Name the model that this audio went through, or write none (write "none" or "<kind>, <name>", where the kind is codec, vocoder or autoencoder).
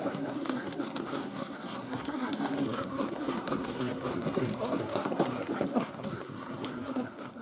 codec, SNAC